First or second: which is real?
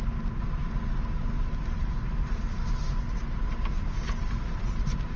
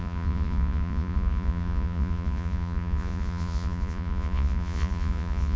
first